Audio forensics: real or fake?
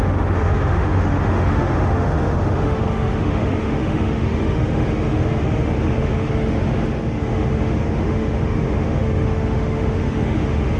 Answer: fake